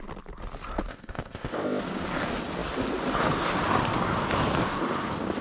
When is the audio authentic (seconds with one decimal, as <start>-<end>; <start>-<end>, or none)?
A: 0.0-0.9; 1.8-5.4